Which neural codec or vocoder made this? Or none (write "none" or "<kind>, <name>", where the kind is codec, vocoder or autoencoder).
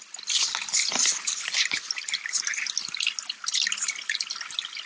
none